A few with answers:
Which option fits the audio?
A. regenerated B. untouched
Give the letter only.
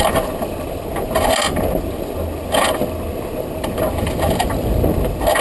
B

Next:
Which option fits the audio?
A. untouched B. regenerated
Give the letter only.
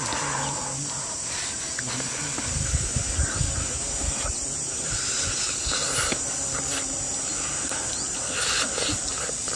A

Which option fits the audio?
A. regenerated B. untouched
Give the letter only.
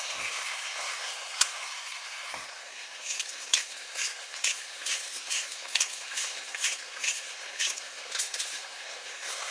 A